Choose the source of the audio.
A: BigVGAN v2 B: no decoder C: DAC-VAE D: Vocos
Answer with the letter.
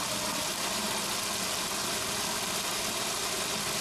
B